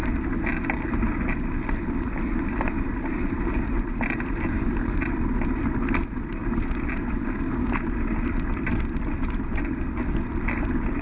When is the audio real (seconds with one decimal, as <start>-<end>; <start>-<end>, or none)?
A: 0.0-11.0